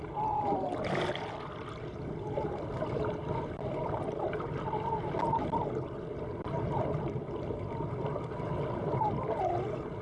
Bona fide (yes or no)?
yes